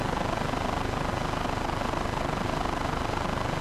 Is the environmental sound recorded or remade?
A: recorded